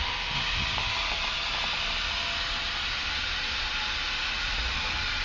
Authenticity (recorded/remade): recorded